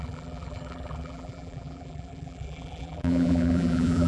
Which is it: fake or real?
fake